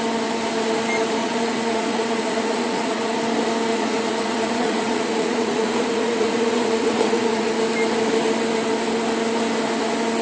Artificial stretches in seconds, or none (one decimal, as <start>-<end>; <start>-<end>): 1.2-3.2; 3.7-7.5